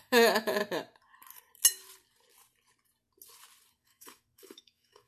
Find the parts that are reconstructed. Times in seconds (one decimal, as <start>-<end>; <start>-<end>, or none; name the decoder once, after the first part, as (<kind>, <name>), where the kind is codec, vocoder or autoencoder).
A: 0.0-0.6 (autoencoder, DAC-VAE); 3.7-5.1